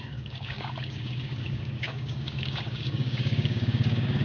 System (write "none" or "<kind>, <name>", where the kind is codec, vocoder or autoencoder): codec, DAC